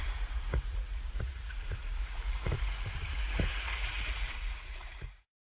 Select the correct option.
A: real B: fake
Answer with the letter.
B